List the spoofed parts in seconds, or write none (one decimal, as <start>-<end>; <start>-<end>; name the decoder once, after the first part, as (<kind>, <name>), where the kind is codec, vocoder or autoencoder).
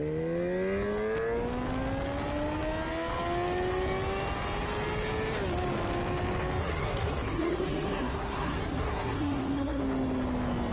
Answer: 6.6-9.8 (codec, SNAC)